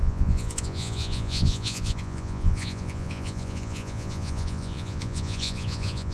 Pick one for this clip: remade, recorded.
remade